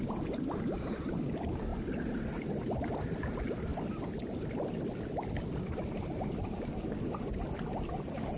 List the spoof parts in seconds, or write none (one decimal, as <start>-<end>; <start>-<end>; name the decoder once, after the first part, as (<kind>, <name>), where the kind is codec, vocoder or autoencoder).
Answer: none